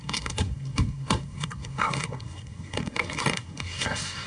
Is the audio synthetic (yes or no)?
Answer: yes